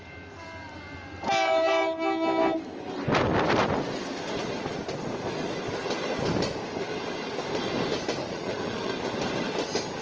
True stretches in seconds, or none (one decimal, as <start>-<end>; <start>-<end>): 0.0-8.2; 8.9-10.0

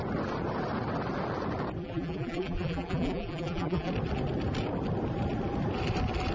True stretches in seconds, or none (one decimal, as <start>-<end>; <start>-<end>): 0.0-1.8; 3.9-6.3

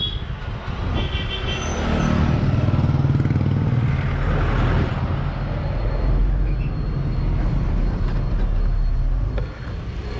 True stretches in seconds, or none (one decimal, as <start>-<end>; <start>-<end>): 0.0-10.2

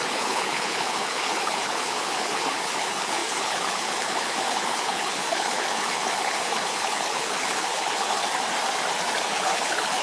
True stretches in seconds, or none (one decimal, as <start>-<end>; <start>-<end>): 8.2-9.2

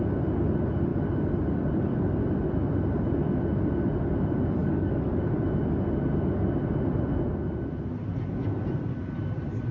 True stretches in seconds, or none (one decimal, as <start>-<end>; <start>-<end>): 0.0-4.6; 5.2-9.7

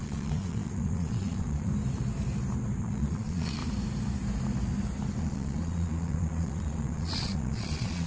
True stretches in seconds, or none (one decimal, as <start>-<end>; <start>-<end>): 1.7-2.8; 3.6-5.2